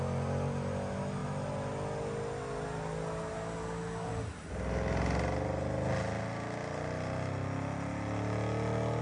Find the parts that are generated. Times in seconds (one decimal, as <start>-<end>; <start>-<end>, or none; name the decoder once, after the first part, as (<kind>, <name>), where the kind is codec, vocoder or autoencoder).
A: none